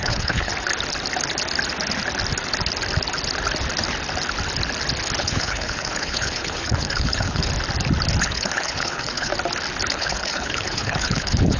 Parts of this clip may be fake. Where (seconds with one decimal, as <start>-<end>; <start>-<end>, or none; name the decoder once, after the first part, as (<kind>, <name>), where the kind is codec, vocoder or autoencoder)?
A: 0.0-0.5 (codec, HILCodec); 5.2-7.5; 8.2-9.3; 9.9-11.6